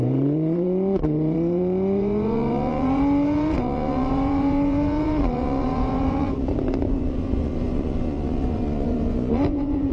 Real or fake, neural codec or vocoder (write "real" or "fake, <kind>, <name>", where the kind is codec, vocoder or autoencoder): fake, vocoder, Vocos